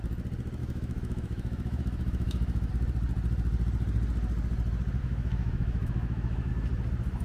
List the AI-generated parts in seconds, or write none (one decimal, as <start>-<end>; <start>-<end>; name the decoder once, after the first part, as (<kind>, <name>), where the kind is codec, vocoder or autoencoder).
0.6-2.7 (autoencoder, DAC-VAE); 5.0-6.5